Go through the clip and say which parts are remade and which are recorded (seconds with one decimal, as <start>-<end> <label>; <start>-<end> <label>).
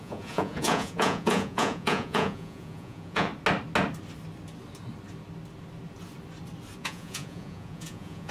0.0-3.3 remade; 3.3-6.8 recorded; 6.8-8.3 remade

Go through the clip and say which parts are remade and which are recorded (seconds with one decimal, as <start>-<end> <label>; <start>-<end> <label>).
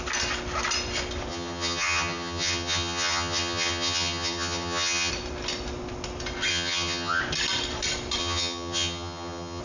0.0-1.3 recorded; 1.3-5.1 remade; 5.1-6.5 recorded; 6.5-7.2 remade; 7.2-8.2 recorded; 8.2-9.6 remade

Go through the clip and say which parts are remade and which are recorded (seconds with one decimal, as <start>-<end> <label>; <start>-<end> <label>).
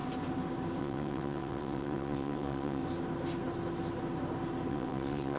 0.0-0.8 recorded; 0.8-2.8 remade; 2.8-4.7 recorded; 4.7-5.4 remade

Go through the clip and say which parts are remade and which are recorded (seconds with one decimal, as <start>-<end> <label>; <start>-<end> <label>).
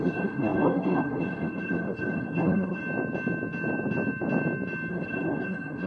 0.0-2.8 remade; 2.8-4.9 recorded; 4.9-5.9 remade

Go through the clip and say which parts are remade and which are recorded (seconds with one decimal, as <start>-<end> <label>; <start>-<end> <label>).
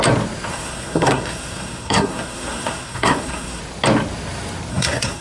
0.0-0.5 recorded; 0.5-3.6 remade; 3.6-4.7 recorded; 4.7-5.2 remade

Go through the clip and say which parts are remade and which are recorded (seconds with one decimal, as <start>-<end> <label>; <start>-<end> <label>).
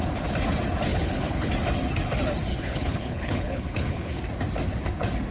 0.0-0.9 recorded; 0.9-1.5 remade; 1.5-2.5 recorded; 2.5-4.2 remade; 4.2-5.3 recorded